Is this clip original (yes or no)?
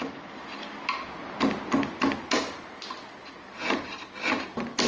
yes